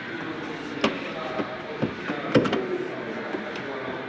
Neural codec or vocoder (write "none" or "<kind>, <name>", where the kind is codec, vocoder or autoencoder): none